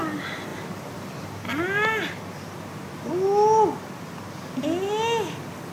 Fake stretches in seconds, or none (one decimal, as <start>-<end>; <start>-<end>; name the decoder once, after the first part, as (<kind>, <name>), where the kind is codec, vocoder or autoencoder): 0.5-3.1 (vocoder, BigVGAN v2)

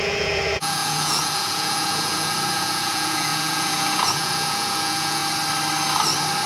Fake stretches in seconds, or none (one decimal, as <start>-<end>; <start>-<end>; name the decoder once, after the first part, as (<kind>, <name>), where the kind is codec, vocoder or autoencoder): 0.0-5.2 (vocoder, Vocos)

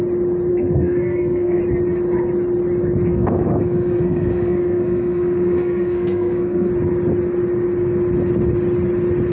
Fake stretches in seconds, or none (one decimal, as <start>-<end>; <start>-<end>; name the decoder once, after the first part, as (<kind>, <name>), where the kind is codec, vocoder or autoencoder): 0.5-1.6 (codec, SNAC); 3.1-6.7

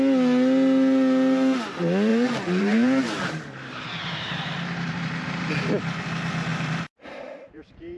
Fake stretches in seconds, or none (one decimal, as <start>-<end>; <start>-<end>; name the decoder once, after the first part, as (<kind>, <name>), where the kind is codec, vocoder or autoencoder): 2.1-5.5 (vocoder, BigVGAN v2); 6.5-8.0

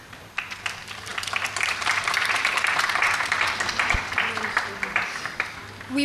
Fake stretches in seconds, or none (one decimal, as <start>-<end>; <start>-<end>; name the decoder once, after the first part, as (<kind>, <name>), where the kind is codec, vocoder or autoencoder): none